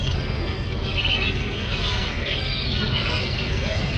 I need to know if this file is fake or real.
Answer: fake